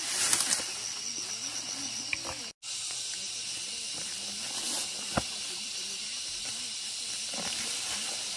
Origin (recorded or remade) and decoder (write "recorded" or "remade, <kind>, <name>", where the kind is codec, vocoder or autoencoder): recorded